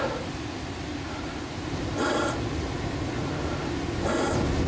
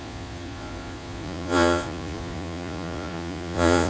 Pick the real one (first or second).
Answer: first